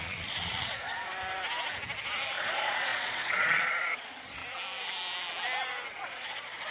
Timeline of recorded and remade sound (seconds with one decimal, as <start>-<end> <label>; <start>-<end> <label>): 0.0-1.1 remade; 1.1-2.4 recorded; 2.4-4.4 remade; 4.4-5.9 recorded; 5.9-6.7 remade